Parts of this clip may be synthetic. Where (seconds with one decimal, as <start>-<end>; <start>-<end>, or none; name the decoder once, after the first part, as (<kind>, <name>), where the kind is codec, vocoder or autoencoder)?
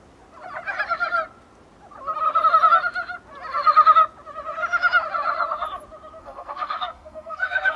6.2-7.8 (codec, SNAC)